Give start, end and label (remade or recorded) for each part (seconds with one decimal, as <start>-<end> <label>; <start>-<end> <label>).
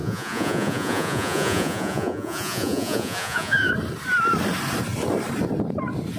0.0-3.7 remade; 3.7-6.2 recorded